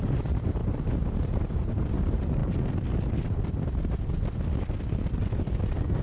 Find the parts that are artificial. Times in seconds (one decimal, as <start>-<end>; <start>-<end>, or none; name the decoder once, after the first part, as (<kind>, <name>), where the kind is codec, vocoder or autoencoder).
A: 0.0-2.4 (vocoder, BigVGAN v2)